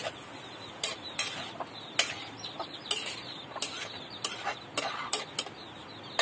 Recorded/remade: recorded